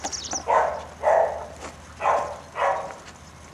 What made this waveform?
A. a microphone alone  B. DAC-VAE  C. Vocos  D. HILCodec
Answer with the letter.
A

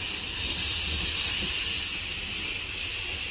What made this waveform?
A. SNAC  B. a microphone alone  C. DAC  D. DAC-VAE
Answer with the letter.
B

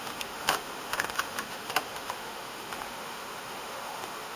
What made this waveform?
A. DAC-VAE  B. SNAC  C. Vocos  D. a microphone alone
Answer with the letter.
A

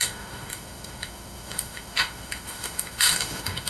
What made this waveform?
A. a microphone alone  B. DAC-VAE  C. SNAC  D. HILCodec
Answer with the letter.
B